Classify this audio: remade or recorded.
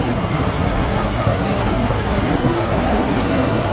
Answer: remade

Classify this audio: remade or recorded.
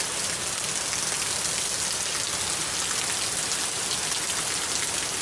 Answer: recorded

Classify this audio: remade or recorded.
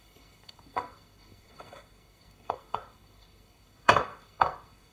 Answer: remade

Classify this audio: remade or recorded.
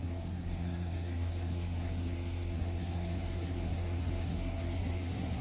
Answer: remade